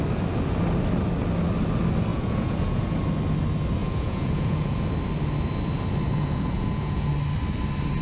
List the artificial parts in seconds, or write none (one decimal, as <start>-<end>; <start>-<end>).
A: 2.1-3.0; 3.8-4.9; 6.1-7.1